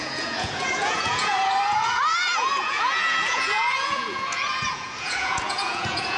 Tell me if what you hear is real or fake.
fake